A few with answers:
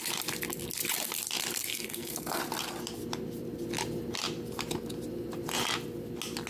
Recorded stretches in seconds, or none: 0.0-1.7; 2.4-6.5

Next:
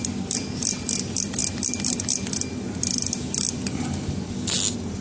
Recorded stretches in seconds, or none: 0.0-5.0

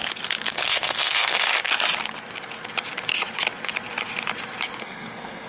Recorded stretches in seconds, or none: 0.0-0.5; 1.5-4.8

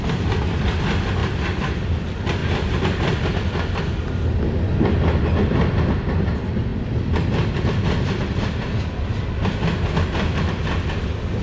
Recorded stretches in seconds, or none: 0.0-11.4

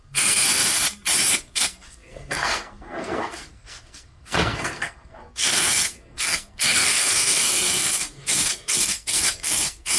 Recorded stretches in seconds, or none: 0.8-1.4